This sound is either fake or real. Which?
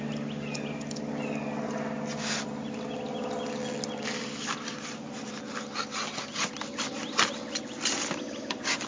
real